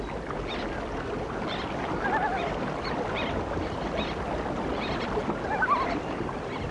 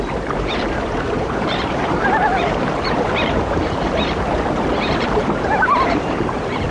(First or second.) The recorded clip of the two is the first